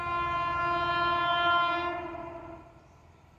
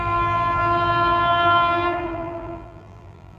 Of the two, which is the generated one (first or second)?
second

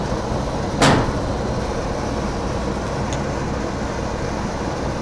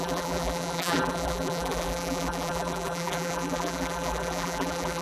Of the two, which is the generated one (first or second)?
second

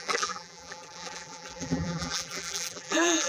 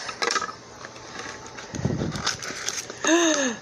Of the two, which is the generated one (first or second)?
first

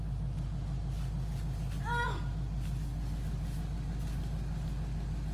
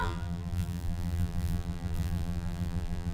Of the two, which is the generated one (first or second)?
second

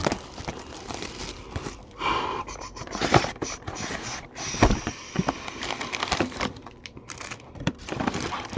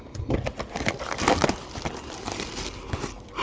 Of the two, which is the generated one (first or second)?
first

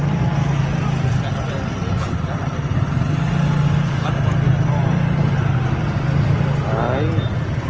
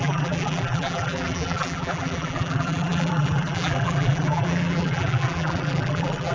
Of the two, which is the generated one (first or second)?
second